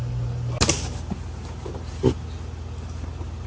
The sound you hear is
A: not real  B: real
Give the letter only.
B